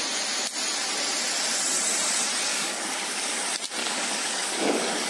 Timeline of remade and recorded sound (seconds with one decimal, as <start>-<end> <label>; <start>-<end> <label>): 0.0-2.5 recorded; 2.5-3.4 remade; 3.4-3.8 recorded; 3.8-5.1 remade